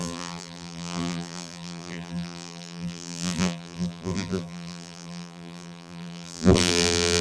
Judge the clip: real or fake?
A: fake